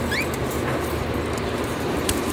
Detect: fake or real real